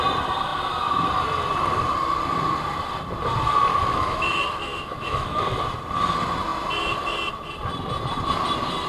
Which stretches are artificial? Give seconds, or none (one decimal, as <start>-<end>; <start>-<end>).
3.7-5.4